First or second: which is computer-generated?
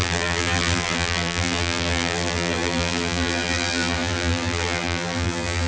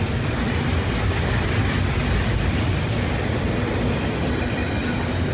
first